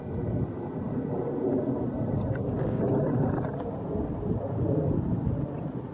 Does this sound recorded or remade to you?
recorded